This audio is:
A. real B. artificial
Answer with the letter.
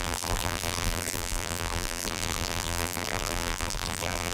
B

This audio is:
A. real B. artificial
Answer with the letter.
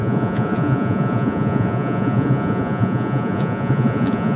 B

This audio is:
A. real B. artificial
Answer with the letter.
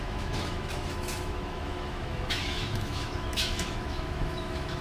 B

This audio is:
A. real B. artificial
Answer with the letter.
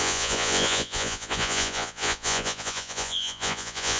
B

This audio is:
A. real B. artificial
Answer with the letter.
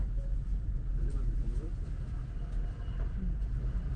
A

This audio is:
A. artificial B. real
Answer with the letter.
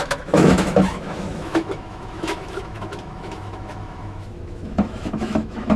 A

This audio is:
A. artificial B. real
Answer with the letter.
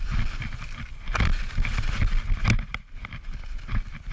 B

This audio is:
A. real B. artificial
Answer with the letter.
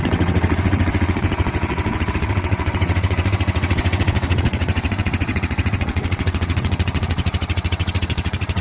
B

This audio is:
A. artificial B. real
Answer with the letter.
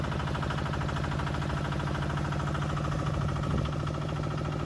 B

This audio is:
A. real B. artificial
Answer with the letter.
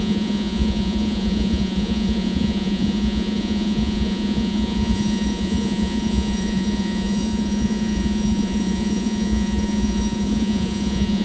B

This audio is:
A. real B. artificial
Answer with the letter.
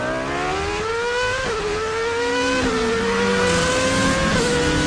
A